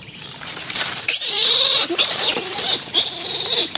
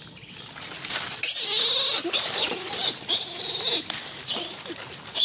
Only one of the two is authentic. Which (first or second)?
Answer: second